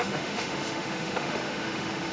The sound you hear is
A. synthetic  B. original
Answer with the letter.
A